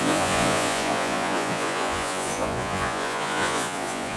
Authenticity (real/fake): fake